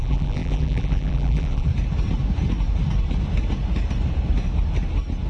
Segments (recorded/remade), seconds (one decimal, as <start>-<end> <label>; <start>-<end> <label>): 0.0-1.7 remade; 1.7-5.3 recorded